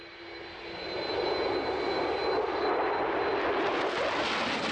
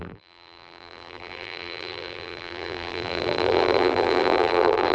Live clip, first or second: first